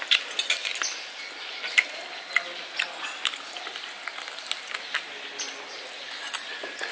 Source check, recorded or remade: recorded